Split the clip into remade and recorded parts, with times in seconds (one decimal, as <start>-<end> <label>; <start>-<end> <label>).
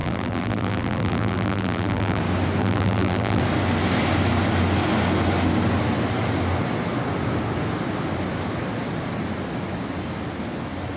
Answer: 0.0-2.2 remade; 2.2-2.6 recorded; 2.6-3.4 remade; 3.4-11.0 recorded